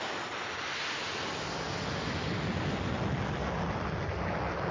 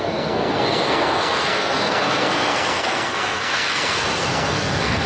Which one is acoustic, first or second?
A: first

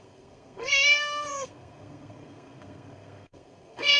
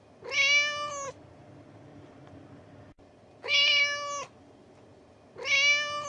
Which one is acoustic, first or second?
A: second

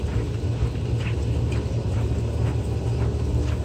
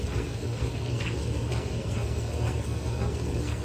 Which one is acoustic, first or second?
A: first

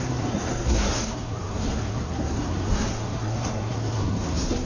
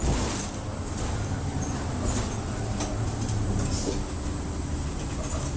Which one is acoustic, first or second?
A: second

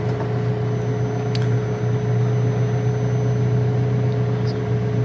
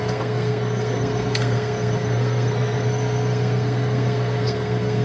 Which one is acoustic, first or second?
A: first